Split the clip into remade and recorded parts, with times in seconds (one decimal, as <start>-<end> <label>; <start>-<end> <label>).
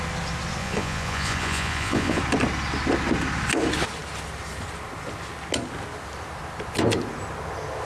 0.0-0.6 recorded; 0.6-2.2 remade; 2.2-7.9 recorded